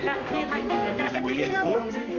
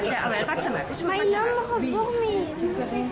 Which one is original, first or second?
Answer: second